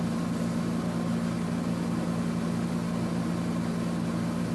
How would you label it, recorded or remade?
recorded